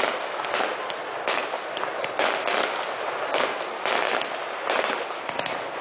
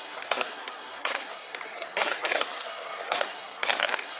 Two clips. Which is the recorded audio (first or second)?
first